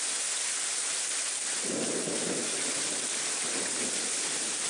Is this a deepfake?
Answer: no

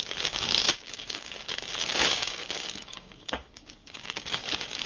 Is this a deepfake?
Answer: yes